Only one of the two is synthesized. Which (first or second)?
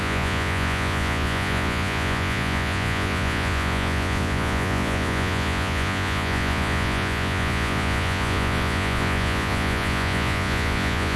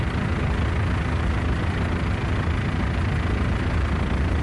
first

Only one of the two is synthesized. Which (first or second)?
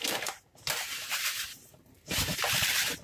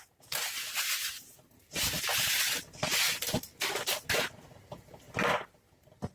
first